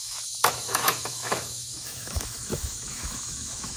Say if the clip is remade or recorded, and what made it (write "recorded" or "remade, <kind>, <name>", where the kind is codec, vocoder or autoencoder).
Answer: remade, autoencoder, DAC-VAE